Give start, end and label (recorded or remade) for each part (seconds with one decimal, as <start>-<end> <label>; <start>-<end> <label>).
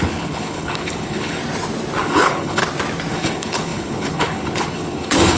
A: 0.0-1.4 remade; 1.4-2.0 recorded; 2.0-2.6 remade; 2.6-3.1 recorded; 3.1-5.4 remade